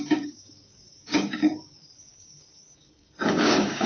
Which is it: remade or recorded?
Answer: remade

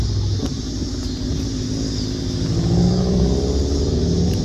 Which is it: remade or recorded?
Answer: recorded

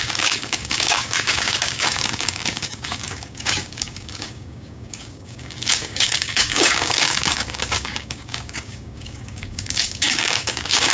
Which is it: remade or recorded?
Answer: remade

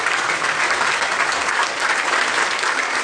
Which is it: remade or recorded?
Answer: remade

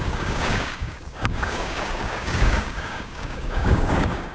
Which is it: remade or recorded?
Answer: remade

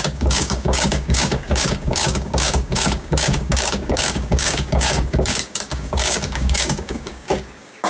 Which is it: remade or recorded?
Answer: remade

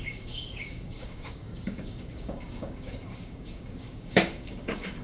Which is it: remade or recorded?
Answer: remade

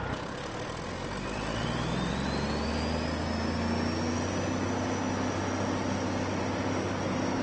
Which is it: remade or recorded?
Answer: recorded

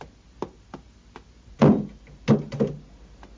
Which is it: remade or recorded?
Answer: recorded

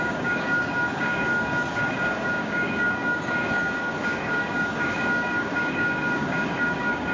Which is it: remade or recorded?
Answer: remade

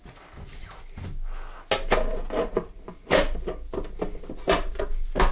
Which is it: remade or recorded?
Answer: recorded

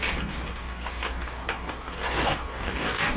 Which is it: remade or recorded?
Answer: remade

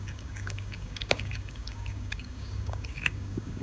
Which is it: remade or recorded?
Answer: remade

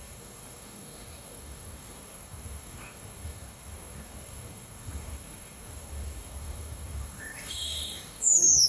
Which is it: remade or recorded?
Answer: remade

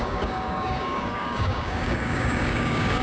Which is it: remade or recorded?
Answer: remade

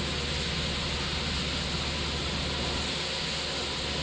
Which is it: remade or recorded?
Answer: recorded